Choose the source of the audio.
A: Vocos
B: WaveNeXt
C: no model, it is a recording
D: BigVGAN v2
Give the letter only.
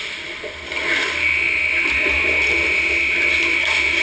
C